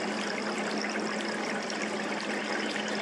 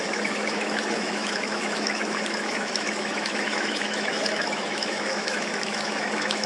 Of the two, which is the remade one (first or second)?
second